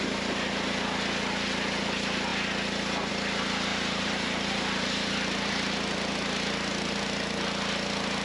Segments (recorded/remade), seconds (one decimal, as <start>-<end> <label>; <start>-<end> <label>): 0.0-3.7 recorded; 3.7-5.1 remade; 5.1-8.2 recorded